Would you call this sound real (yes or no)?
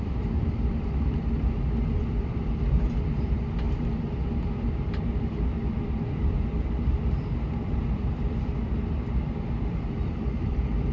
no